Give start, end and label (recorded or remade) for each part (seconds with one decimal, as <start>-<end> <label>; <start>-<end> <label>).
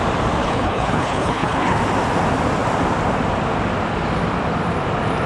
0.0-0.4 recorded; 0.4-1.8 remade; 1.8-5.3 recorded